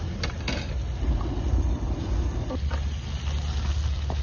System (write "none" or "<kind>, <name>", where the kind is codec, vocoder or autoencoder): none